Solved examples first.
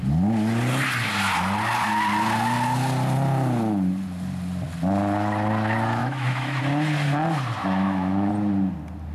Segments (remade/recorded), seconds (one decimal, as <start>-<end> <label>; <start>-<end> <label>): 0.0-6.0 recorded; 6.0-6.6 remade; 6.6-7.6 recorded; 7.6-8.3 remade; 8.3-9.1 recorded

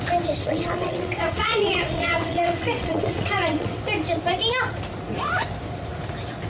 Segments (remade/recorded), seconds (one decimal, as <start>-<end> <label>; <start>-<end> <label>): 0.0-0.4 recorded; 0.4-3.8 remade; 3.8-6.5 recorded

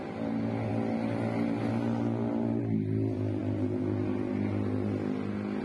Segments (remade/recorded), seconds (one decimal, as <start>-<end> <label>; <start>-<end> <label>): 0.0-5.6 recorded

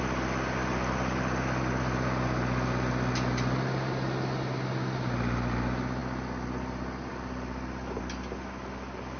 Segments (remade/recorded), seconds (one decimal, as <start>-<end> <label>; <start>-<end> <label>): 0.0-9.2 recorded

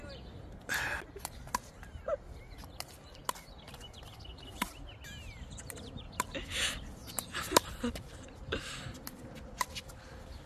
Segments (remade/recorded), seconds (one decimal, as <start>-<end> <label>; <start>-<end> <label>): 0.0-7.0 recorded; 7.0-8.6 remade; 8.6-10.5 recorded

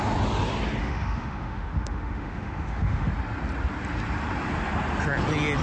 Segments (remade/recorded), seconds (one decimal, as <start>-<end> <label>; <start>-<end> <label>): 0.0-0.8 recorded; 0.8-3.1 remade; 3.1-5.6 recorded

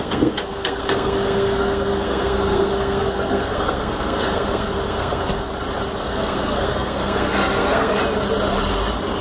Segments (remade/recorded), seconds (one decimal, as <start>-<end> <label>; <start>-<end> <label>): 0.0-5.5 remade; 5.5-6.0 recorded; 6.0-8.0 remade; 8.0-9.2 recorded

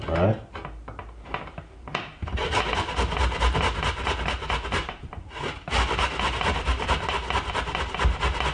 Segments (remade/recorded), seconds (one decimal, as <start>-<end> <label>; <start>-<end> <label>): 0.0-8.5 recorded